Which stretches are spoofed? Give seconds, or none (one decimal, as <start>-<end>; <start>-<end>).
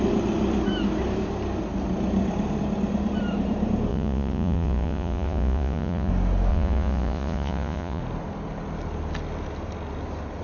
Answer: 3.9-6.1; 6.5-8.0